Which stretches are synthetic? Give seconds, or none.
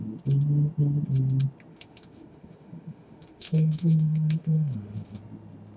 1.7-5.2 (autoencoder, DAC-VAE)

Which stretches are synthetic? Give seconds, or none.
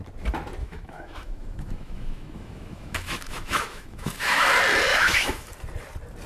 0.6-4.4 (autoencoder, DAC-VAE); 4.9-5.5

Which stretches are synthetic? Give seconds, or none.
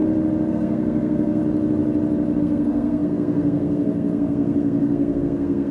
0.5-1.4 (codec, SNAC); 2.4-5.7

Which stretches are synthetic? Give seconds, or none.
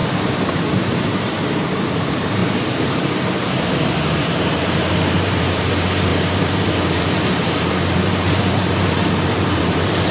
0.7-2.4 (vocoder, BigVGAN v2); 3.7-10.1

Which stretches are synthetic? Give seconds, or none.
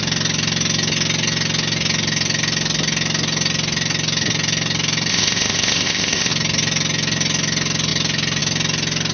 5.1-6.3 (codec, ZipCodec)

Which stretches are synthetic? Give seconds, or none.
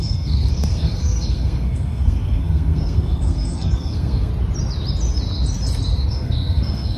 0.0-4.3 (codec, SNAC); 6.1-7.0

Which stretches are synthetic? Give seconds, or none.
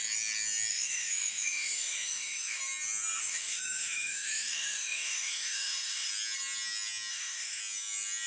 0.7-2.6 (autoencoder, DAC-VAE); 3.2-6.1; 7.1-7.6